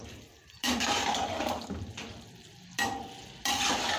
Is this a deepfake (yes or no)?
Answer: yes